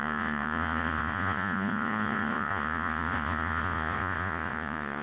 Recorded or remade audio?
remade